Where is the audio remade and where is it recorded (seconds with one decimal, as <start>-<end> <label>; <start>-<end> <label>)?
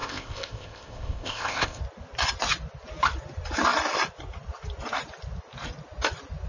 0.0-1.8 remade; 1.8-6.5 recorded